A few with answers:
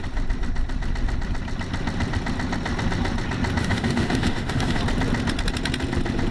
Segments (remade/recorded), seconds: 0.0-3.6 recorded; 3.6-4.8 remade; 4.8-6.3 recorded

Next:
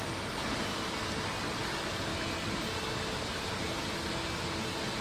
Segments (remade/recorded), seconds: 0.0-5.0 recorded

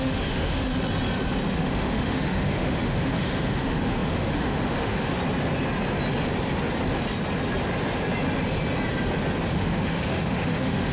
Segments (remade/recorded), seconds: 0.0-0.7 remade; 0.7-1.5 recorded; 1.5-5.2 remade; 5.2-9.5 recorded; 9.5-10.9 remade

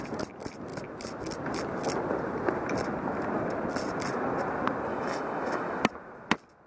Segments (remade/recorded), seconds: 0.0-4.9 recorded; 4.9-5.8 remade; 5.8-6.7 recorded